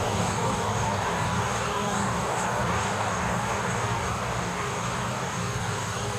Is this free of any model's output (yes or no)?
no